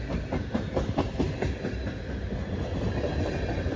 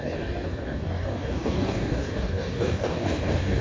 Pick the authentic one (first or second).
first